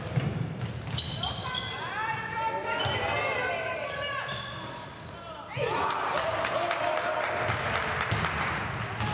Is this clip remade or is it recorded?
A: recorded